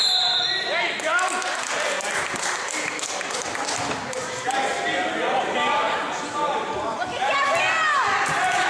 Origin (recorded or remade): recorded